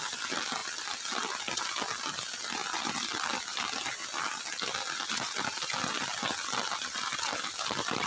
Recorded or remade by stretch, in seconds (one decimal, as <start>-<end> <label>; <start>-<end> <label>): 0.0-8.1 recorded